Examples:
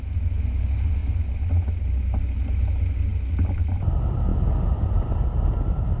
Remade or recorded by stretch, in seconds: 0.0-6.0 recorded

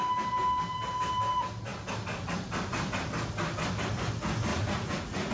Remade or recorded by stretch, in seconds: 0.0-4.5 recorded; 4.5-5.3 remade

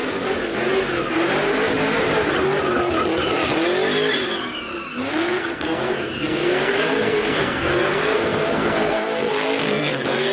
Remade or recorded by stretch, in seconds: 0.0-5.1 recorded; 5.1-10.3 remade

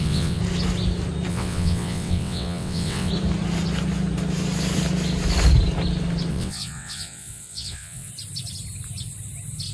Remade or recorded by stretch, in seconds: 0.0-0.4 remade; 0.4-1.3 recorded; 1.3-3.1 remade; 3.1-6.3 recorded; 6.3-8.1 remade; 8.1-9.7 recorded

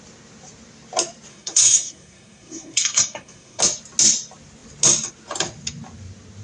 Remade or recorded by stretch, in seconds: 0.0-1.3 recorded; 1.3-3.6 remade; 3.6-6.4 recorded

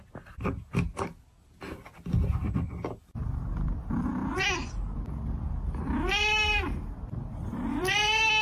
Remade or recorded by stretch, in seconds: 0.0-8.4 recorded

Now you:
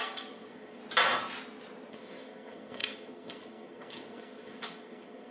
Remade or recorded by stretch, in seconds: 0.0-0.8 remade; 0.8-1.9 recorded; 1.9-5.3 remade

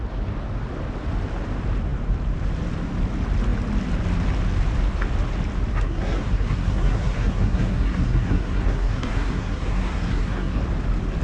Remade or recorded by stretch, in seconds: 0.0-5.7 recorded; 5.7-10.6 remade; 10.6-11.2 recorded